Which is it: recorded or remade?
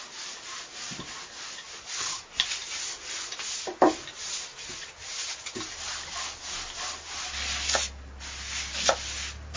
recorded